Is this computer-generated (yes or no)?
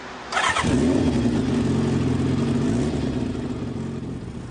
no